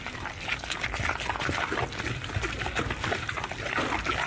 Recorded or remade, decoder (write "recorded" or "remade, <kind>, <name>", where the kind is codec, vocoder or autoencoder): recorded